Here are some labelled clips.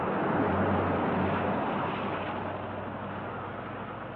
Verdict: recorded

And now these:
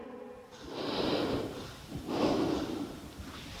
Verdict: recorded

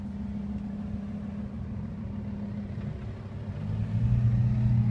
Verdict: recorded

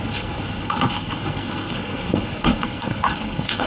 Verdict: remade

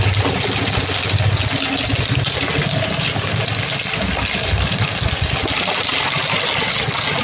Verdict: recorded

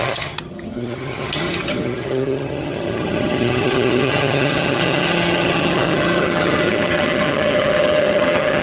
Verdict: remade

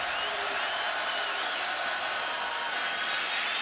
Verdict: recorded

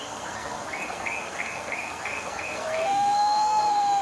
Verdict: remade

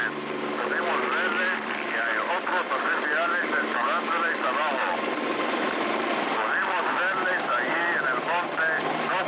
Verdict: remade